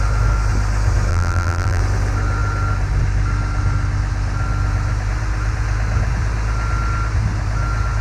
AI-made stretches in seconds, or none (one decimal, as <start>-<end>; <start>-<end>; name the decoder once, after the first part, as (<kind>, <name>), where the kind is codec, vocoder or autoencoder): 1.1-1.8 (vocoder, BigVGAN v2)